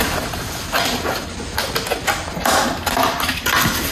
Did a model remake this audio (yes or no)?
no